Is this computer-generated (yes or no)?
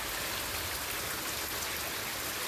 no